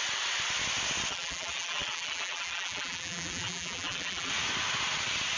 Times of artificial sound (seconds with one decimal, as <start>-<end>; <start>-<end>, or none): 1.1-4.3